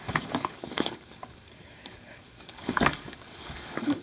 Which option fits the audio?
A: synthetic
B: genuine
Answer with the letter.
A